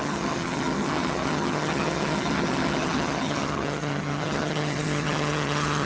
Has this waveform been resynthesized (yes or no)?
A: yes